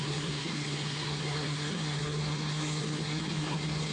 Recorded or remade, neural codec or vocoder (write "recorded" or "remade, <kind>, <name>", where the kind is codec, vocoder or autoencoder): remade, codec, SNAC